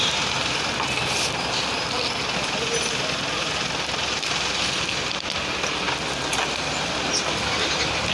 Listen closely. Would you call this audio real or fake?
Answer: real